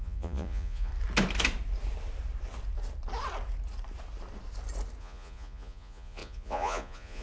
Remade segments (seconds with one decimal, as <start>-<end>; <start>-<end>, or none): 0.0-0.9; 5.0-7.2